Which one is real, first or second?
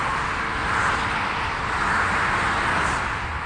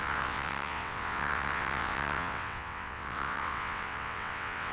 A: first